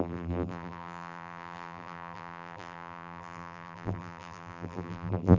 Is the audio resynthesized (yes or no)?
yes